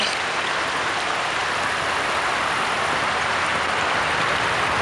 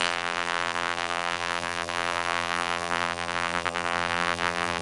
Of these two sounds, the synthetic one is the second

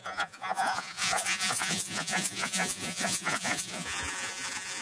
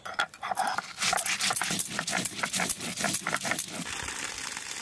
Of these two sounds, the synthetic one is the first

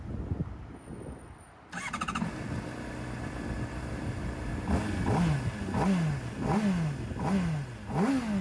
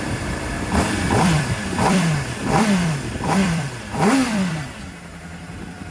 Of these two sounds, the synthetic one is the second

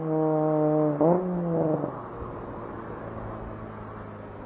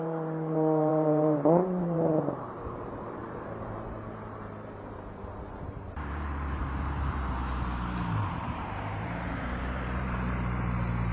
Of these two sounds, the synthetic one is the second